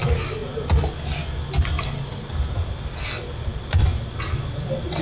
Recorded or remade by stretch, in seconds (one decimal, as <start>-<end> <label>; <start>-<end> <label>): 0.0-5.0 recorded